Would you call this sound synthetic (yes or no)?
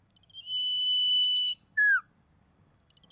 no